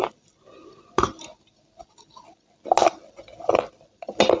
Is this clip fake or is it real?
real